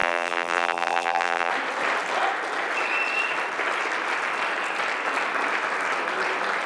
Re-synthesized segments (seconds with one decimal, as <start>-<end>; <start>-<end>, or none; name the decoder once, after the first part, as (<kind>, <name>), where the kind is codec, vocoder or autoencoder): 0.0-1.5 (vocoder, BigVGAN v2)